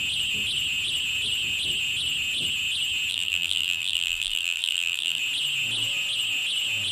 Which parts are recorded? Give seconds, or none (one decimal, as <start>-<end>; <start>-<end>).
0.0-3.1; 5.2-6.9